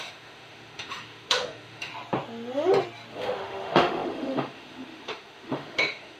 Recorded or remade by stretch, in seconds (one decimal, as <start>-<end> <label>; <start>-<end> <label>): 0.0-1.9 remade; 1.9-3.1 recorded; 3.1-6.2 remade